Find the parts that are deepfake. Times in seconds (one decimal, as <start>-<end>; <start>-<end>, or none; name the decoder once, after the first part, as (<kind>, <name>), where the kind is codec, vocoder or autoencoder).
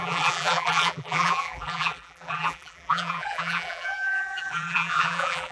0.0-5.5 (vocoder, BigVGAN v2)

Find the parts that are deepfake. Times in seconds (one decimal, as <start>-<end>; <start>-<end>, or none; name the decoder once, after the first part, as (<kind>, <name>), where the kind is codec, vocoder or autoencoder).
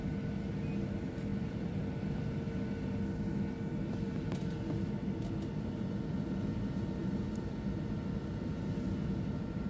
1.3-2.7 (vocoder, BigVGAN v2)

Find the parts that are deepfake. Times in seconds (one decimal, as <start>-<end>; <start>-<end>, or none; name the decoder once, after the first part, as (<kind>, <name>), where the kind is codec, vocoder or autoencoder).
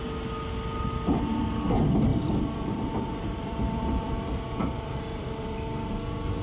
2.1-5.9 (vocoder, BigVGAN v2)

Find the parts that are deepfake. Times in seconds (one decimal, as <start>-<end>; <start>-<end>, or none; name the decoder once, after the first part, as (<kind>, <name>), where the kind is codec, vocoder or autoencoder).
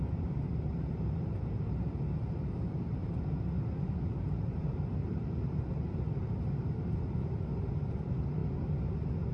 0.0-3.0 (vocoder, BigVGAN v2); 3.8-8.4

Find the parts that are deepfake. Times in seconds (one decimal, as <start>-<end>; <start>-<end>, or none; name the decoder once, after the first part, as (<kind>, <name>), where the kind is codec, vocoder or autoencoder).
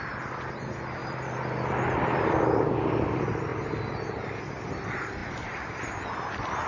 0.0-5.2 (vocoder, BigVGAN v2); 6.3-6.7